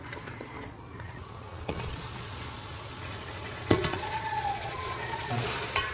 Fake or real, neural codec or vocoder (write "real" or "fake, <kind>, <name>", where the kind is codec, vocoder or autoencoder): fake, vocoder, Vocos